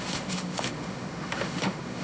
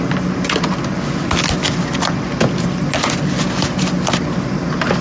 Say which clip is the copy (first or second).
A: first